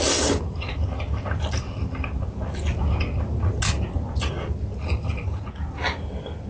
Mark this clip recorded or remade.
recorded